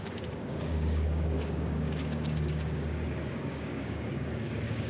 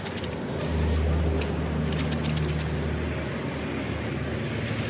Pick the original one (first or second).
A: second